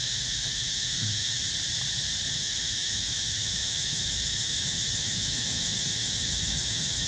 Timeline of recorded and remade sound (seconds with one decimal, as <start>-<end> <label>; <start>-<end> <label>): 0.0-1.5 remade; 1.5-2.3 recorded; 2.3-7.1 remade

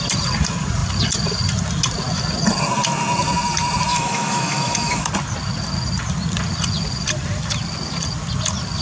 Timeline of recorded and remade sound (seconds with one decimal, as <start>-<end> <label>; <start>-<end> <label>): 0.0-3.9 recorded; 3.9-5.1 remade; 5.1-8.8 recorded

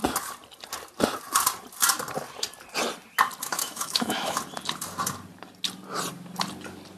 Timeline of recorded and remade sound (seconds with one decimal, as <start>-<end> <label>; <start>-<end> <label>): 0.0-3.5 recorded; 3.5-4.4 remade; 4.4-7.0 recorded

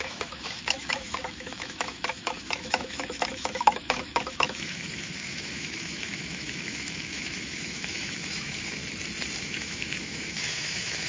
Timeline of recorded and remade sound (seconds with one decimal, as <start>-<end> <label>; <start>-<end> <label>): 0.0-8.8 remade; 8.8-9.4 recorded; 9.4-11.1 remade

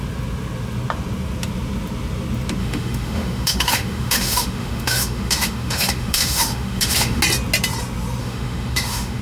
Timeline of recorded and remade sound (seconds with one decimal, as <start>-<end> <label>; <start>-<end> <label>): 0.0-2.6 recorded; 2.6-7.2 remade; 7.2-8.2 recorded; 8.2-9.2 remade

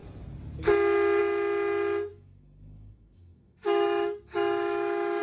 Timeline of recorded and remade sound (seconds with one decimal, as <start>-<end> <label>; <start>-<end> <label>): 0.0-2.1 recorded; 2.1-5.2 remade